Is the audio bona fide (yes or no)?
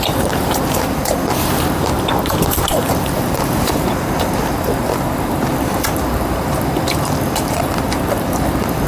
no